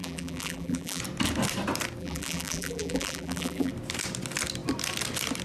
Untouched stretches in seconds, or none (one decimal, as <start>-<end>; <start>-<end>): 1.0-2.0; 3.7-5.4